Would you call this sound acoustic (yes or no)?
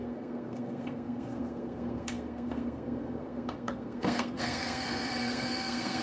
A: no